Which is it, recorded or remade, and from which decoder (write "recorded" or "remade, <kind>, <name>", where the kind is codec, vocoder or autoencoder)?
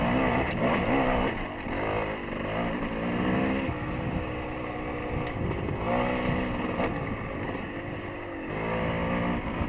recorded